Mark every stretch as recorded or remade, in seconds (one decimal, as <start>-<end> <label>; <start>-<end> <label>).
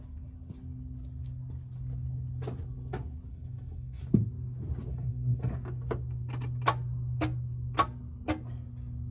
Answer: 0.0-3.3 recorded; 3.3-4.0 remade; 4.0-4.9 recorded; 4.9-5.5 remade; 5.5-9.1 recorded